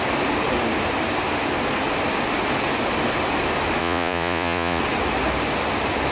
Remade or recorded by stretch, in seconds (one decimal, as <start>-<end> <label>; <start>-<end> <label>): 0.0-3.8 recorded; 3.8-4.8 remade; 4.8-6.1 recorded